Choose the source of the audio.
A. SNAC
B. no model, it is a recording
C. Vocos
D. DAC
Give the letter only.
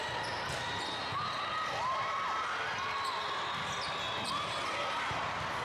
B